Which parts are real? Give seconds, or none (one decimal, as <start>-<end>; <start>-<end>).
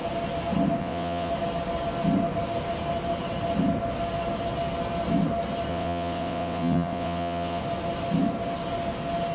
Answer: 0.0-0.8; 1.3-5.7; 7.6-9.3